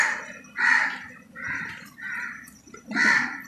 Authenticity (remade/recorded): remade